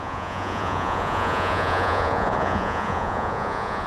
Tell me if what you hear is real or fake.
fake